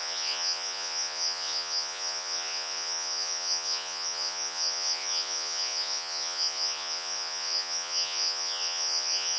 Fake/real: fake